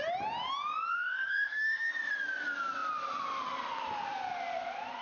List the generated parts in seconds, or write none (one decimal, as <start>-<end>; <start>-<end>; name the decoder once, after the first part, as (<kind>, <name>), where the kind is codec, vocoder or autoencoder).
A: 0.9-1.9 (codec, DAC)